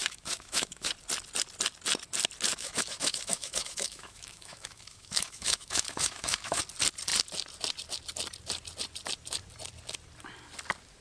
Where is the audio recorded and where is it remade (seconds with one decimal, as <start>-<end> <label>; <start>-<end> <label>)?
0.0-0.9 remade; 0.9-2.5 recorded; 2.5-6.6 remade; 6.6-11.0 recorded